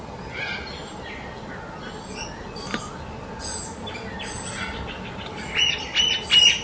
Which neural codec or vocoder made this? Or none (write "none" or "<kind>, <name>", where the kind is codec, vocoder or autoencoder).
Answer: none